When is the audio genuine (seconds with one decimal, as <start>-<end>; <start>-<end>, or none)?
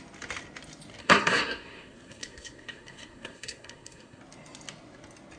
0.0-1.0; 4.2-5.4